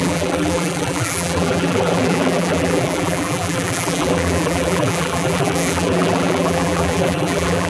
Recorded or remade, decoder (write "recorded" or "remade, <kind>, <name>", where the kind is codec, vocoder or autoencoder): remade, vocoder, BigVGAN v2